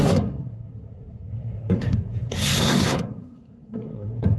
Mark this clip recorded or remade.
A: remade